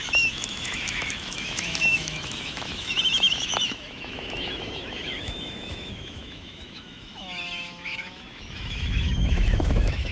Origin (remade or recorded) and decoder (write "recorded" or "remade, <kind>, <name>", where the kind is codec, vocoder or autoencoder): remade, autoencoder, DAC-VAE